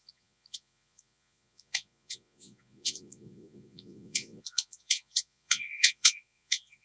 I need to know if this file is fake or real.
fake